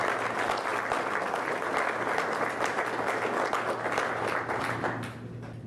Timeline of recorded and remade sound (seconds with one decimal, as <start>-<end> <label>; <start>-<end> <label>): 0.0-5.7 recorded